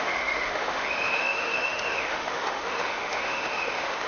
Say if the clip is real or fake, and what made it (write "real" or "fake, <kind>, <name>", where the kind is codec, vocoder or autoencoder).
fake, autoencoder, DAC-VAE